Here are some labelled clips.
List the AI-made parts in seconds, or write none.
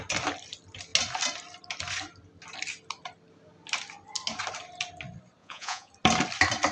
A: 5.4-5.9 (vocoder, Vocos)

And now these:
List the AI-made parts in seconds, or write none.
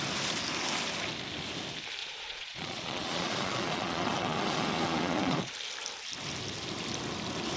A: 2.0-5.5 (vocoder, Vocos)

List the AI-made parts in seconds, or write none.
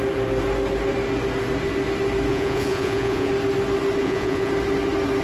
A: 2.3-3.3 (vocoder, Vocos); 4.0-4.5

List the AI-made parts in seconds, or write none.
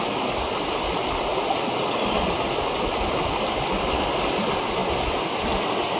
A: none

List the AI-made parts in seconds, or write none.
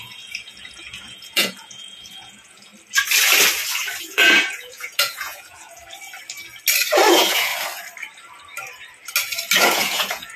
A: 0.0-2.7 (vocoder, Vocos); 4.0-5.8; 7.1-7.5; 9.6-10.4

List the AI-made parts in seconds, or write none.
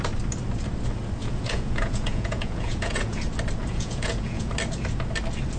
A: 1.2-3.2 (vocoder, Vocos); 3.6-4.5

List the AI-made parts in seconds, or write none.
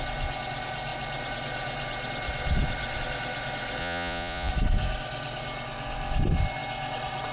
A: 3.8-4.5 (vocoder, Vocos)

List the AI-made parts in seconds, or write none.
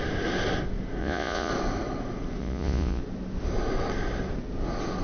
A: 1.0-1.5 (vocoder, Vocos); 2.4-3.0